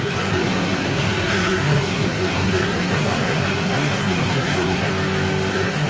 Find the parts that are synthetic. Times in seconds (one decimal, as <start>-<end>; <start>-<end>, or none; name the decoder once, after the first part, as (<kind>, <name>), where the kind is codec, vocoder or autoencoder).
0.0-4.9 (codec, SNAC); 5.5-5.9